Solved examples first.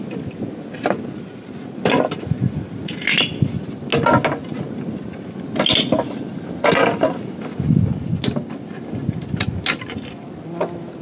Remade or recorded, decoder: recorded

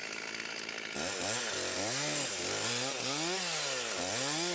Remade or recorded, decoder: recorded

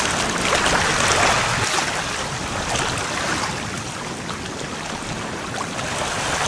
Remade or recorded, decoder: recorded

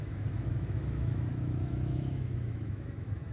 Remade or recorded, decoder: remade, autoencoder, DAC-VAE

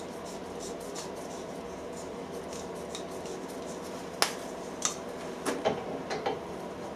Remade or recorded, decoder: recorded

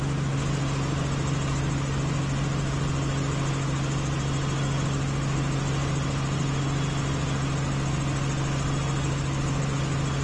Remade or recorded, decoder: recorded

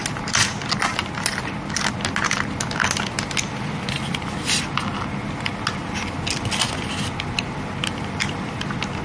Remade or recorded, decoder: recorded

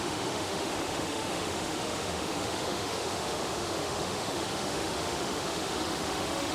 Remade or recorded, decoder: remade, autoencoder, DAC-VAE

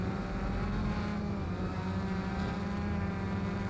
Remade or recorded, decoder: recorded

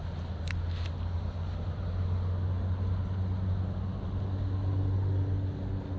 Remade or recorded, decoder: recorded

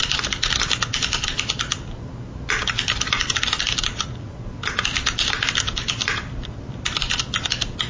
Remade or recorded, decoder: recorded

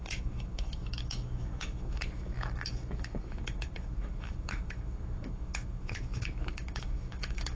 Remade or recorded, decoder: remade, autoencoder, DAC-VAE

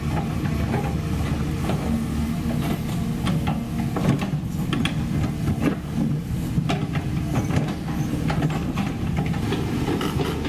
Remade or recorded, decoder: recorded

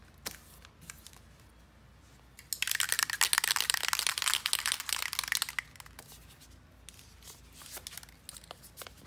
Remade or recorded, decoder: recorded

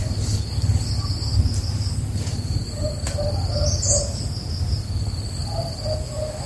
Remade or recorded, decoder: recorded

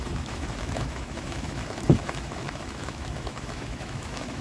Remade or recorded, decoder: remade, autoencoder, DAC-VAE